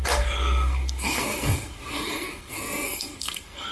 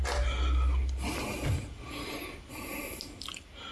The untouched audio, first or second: second